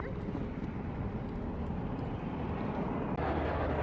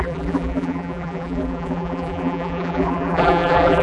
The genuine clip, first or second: first